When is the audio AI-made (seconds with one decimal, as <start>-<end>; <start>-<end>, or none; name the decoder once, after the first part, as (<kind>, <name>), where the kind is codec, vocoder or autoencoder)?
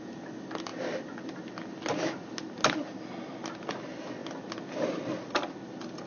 none